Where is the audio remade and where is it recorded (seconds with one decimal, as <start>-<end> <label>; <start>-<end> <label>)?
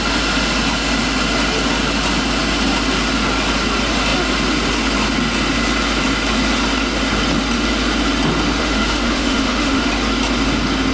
0.0-8.6 recorded; 8.6-9.9 remade; 9.9-10.9 recorded